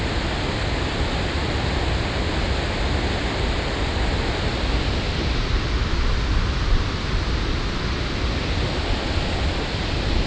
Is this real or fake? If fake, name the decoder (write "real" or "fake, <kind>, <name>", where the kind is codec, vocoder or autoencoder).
real